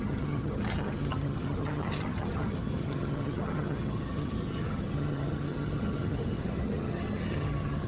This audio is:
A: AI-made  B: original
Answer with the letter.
A